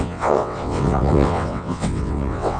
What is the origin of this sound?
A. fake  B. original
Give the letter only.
A